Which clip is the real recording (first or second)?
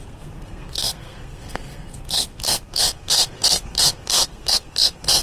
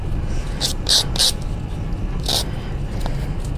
second